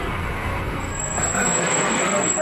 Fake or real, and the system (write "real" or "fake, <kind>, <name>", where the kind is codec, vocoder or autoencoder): fake, codec, SNAC